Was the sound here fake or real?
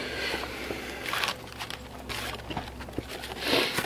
real